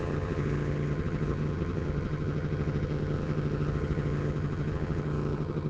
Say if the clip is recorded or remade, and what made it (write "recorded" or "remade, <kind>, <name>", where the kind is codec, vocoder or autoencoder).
remade, vocoder, HiFi-GAN